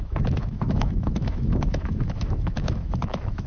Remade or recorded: remade